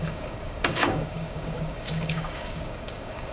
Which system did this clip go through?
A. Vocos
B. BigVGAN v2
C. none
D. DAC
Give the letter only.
D